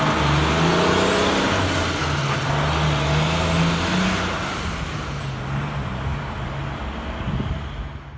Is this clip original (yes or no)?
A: yes